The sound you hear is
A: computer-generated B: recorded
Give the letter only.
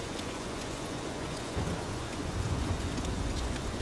A